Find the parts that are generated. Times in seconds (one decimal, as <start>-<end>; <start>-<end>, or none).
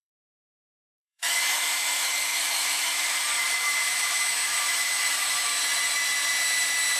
0.0-5.5